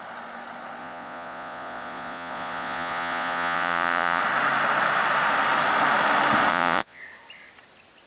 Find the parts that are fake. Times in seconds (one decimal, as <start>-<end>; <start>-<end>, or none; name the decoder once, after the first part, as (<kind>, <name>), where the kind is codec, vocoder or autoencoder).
0.8-4.2 (vocoder, Vocos); 6.5-7.0